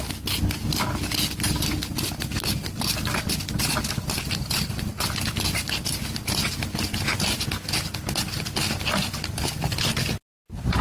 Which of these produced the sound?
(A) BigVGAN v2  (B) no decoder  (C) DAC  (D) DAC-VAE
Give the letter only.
B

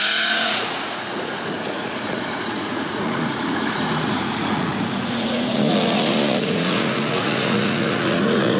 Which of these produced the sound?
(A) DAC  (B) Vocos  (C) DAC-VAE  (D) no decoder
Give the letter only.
B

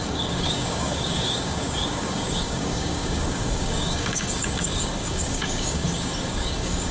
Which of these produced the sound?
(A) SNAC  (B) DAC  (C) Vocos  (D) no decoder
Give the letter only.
B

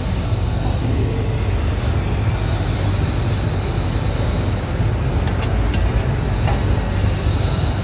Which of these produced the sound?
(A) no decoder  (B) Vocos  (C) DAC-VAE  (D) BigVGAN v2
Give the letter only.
A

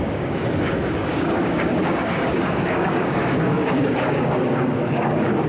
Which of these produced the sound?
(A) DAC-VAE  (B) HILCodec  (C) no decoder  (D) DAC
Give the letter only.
D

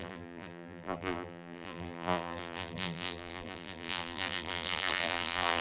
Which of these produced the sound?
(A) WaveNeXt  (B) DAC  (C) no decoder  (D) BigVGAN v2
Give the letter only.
D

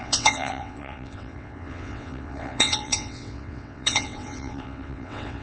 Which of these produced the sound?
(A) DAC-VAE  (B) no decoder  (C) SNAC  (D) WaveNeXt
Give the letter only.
D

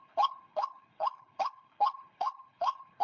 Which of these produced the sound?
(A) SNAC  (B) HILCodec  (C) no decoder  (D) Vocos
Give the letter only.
B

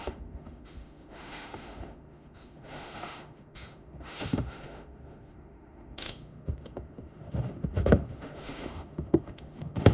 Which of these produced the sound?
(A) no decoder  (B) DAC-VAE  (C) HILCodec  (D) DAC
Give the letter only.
B